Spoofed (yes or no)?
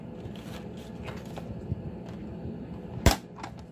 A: no